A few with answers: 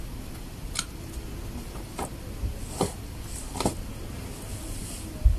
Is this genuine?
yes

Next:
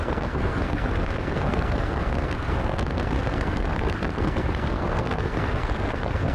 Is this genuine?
no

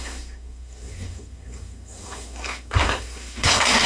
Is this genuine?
no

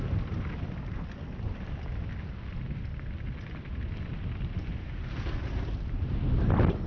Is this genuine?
yes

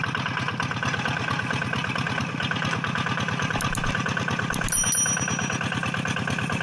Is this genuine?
yes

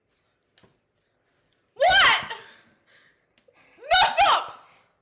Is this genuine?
yes